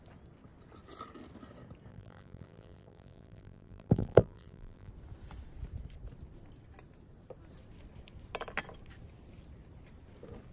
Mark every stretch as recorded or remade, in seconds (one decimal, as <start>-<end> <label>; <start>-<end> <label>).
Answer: 0.0-1.9 recorded; 1.9-4.9 remade; 4.9-10.5 recorded